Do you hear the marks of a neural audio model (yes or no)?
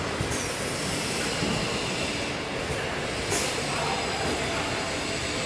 no